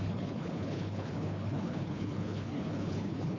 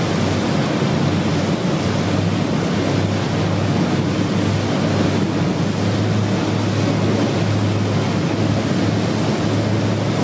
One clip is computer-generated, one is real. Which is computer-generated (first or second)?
first